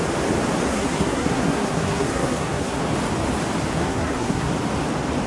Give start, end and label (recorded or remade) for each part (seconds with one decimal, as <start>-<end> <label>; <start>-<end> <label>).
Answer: 0.0-0.7 recorded; 0.7-2.8 remade; 2.8-3.7 recorded; 3.7-4.5 remade; 4.5-5.3 recorded